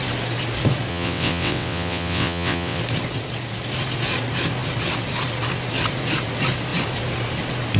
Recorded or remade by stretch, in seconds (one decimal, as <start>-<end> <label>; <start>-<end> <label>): 0.0-0.9 recorded; 0.9-2.8 remade; 2.8-7.8 recorded